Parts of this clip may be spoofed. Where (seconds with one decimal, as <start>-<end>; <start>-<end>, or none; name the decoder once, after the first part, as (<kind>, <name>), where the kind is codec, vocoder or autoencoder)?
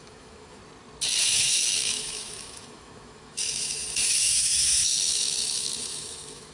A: 0.0-0.6 (autoencoder, DAC-VAE); 1.2-6.5